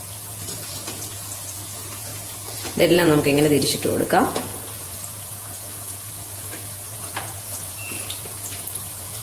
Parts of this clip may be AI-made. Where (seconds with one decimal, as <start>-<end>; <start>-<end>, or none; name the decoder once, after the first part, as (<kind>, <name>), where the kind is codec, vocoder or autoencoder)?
0.0-9.2 (vocoder, Vocos)